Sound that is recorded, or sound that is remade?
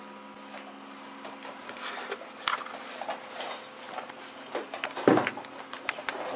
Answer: recorded